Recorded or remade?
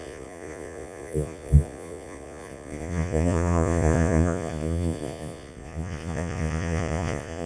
remade